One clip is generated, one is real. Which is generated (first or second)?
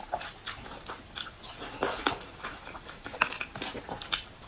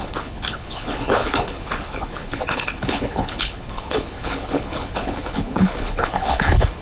second